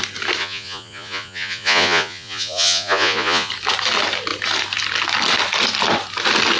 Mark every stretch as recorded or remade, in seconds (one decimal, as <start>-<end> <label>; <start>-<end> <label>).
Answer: 0.0-0.4 recorded; 0.4-3.5 remade; 3.5-6.6 recorded